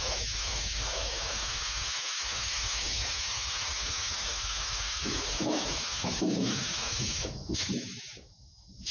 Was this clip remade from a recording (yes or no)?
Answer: yes